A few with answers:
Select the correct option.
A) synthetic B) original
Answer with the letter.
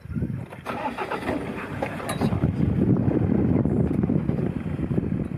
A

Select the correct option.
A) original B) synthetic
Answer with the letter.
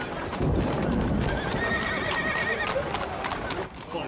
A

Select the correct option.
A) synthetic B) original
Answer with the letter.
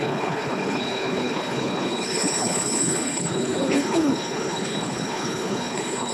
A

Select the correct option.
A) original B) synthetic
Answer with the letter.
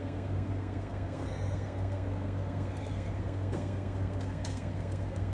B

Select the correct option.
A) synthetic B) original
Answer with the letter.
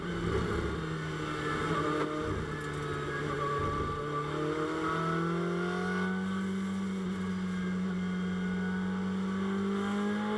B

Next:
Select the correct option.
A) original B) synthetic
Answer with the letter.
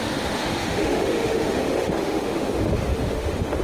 B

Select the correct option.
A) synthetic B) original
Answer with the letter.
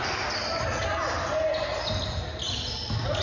B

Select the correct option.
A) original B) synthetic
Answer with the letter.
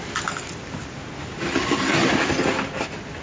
A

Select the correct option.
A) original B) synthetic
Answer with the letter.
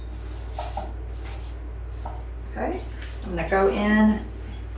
A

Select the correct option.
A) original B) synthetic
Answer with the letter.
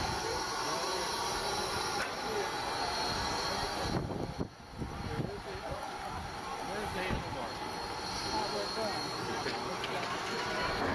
A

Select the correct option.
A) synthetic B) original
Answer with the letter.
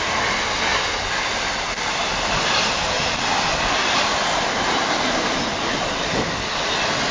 B